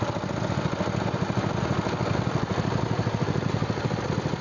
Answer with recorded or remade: recorded